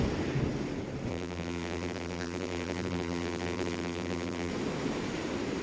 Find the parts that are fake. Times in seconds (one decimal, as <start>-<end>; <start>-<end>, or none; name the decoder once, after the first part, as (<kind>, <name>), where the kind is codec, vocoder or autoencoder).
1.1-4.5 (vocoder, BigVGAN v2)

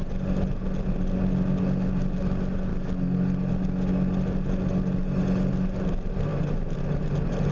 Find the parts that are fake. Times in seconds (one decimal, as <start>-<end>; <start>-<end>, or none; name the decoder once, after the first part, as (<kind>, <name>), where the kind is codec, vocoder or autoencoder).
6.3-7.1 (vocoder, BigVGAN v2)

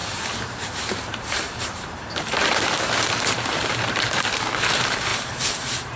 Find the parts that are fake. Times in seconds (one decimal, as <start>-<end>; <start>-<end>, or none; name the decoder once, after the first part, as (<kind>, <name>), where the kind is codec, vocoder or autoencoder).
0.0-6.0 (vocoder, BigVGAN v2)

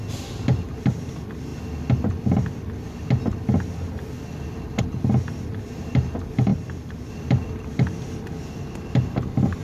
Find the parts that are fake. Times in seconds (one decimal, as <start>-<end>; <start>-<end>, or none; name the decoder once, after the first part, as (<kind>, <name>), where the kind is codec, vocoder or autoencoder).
0.0-1.5 (vocoder, BigVGAN v2); 4.8-9.6

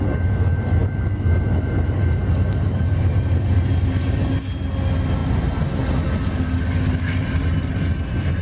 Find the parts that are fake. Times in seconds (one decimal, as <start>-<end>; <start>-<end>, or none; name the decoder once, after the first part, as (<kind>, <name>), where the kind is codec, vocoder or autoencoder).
none

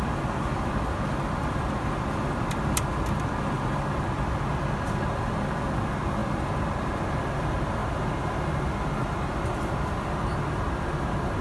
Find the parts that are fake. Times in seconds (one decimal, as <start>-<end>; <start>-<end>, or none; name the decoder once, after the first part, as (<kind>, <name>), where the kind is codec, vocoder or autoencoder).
none

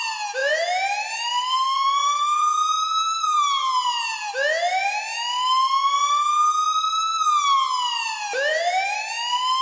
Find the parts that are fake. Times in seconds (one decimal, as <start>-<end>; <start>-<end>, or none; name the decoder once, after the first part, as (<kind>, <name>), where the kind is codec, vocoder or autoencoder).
0.4-4.3 (vocoder, BigVGAN v2); 8.5-9.1

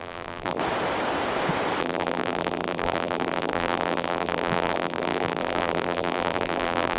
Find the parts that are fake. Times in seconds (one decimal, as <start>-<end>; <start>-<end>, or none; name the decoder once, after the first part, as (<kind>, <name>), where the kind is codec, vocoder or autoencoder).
0.0-0.6 (vocoder, BigVGAN v2); 1.8-7.0